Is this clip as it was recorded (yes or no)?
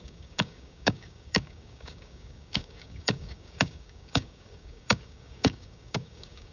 no